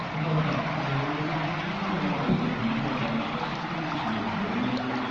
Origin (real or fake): real